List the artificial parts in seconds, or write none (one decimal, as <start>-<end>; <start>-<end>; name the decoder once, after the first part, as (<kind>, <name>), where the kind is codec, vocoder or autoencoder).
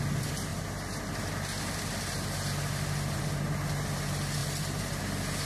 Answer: none